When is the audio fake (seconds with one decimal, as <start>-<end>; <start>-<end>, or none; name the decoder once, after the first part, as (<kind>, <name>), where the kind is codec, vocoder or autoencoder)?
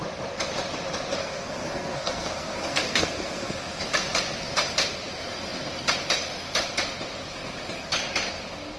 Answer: 1.2-3.5 (codec, SNAC)